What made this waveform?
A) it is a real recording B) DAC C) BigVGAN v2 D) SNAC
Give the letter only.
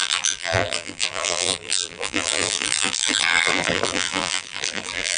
C